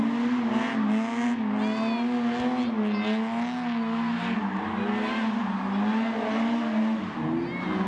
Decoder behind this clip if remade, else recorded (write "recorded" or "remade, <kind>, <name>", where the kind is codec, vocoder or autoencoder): recorded